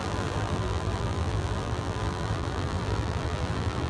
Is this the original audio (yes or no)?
no